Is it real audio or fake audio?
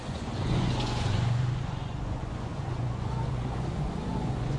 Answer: fake